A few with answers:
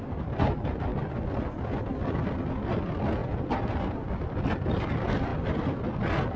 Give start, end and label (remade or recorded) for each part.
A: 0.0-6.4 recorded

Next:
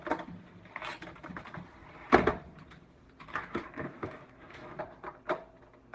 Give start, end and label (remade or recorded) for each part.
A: 0.0-3.3 recorded; 3.3-4.8 remade; 4.8-5.9 recorded

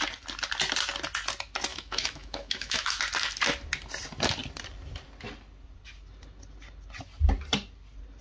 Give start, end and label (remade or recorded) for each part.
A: 0.0-1.7 recorded; 1.7-3.0 remade; 3.0-8.2 recorded

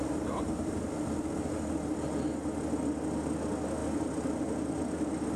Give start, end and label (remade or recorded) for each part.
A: 0.0-5.4 recorded

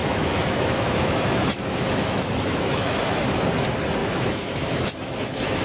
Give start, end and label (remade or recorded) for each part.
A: 0.0-3.2 remade; 3.2-4.0 recorded; 4.0-5.6 remade

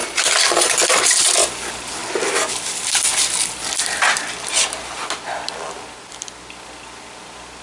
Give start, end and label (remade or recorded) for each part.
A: 0.0-7.6 recorded